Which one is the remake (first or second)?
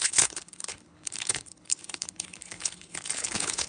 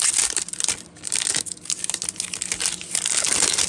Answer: first